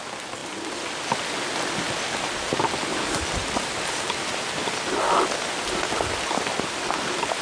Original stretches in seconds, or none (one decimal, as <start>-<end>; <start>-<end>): 0.0-7.4